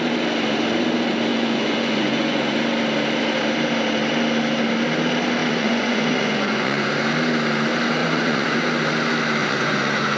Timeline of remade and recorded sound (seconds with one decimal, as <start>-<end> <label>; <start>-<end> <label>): 0.0-1.3 recorded; 1.3-2.6 remade; 2.6-5.4 recorded; 5.4-6.9 remade; 6.9-8.0 recorded; 8.0-8.6 remade; 8.6-9.4 recorded; 9.4-10.2 remade